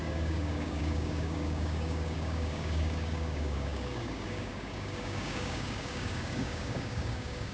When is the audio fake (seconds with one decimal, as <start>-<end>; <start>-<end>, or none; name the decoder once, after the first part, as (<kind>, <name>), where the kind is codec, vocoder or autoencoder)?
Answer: 0.0-7.5 (codec, DAC)